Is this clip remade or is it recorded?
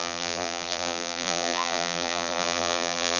remade